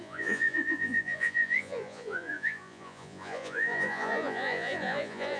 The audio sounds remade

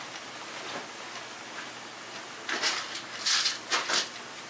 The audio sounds recorded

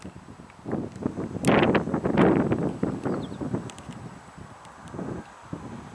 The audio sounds recorded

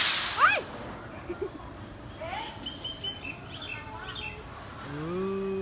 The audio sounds recorded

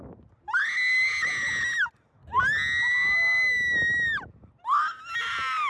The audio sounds recorded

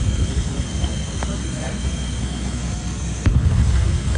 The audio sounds remade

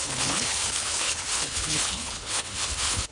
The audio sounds remade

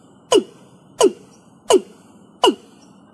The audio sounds recorded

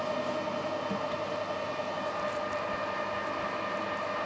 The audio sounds recorded